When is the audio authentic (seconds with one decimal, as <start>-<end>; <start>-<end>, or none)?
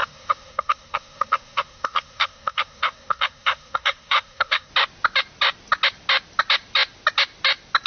4.7-7.9